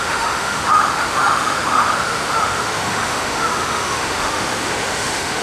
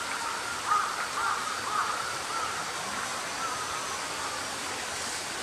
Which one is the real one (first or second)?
second